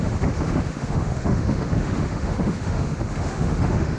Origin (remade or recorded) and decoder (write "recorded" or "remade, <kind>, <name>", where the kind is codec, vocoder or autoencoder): remade, autoencoder, DAC-VAE